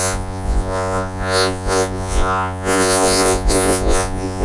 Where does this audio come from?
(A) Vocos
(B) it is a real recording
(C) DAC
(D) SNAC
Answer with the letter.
A